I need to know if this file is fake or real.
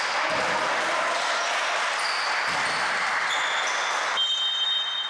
real